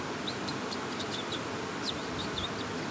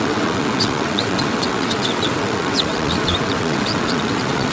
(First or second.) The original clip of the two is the first